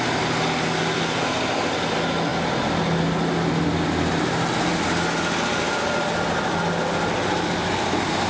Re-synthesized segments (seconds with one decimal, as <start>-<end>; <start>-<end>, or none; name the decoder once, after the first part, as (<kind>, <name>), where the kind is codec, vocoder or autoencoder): none